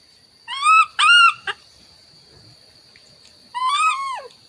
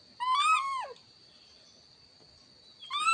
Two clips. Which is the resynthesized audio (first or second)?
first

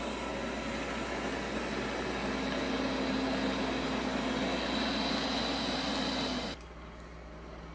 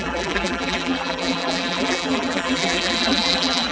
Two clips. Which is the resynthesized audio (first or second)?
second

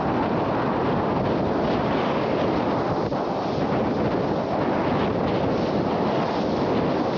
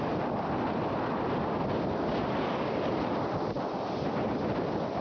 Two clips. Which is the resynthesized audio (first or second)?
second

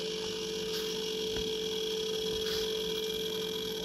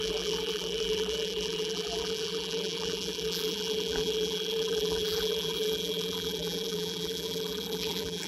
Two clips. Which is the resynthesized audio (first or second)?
second